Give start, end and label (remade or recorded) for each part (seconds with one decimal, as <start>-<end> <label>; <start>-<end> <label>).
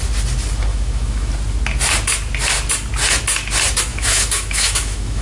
0.0-0.7 recorded; 0.7-1.3 remade; 1.3-3.9 recorded; 3.9-5.2 remade